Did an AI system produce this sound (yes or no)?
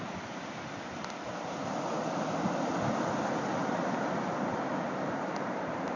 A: yes